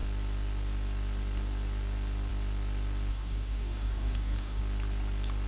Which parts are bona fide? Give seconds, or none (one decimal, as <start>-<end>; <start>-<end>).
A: 0.0-3.1; 4.6-5.5

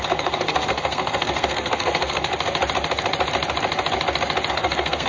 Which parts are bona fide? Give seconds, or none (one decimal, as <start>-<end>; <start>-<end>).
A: 2.3-4.5

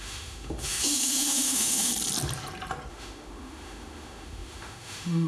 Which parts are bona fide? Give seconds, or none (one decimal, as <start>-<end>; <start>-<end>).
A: 1.9-2.9

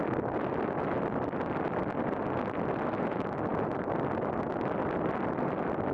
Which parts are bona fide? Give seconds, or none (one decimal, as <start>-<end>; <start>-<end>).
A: 0.0-5.9

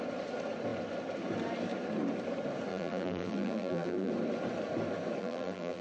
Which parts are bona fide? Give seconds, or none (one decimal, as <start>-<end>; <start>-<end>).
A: 0.0-2.7; 4.1-5.2